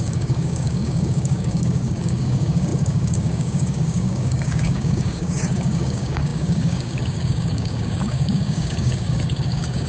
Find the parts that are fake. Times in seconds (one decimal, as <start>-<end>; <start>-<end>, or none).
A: 0.0-9.9